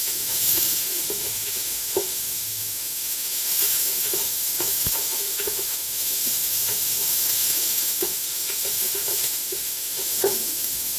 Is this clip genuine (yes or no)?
no